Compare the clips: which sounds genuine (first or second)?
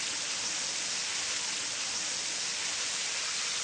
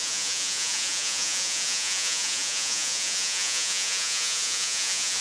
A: first